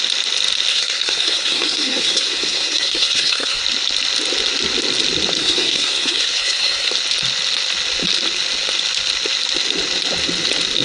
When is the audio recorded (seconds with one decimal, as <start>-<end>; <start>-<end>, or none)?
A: 0.0-0.7; 3.6-5.4; 6.9-10.8